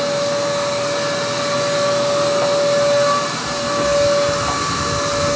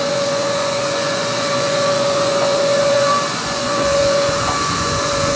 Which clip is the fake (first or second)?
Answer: second